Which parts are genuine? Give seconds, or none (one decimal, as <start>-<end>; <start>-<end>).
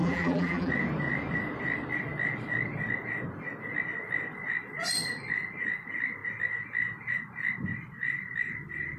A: 0.7-9.0